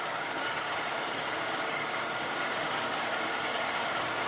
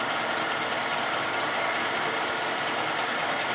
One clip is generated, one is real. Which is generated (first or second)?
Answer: first